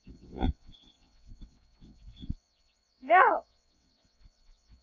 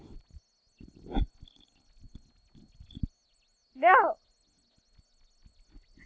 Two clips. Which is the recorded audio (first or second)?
second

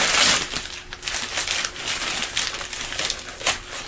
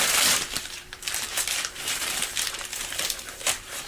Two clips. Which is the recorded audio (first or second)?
first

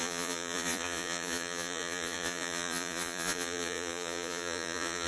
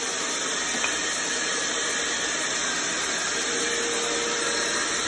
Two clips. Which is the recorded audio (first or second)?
second